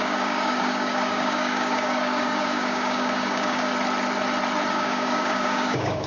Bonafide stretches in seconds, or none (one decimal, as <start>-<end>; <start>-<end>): 3.7-4.7